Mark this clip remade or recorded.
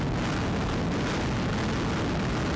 recorded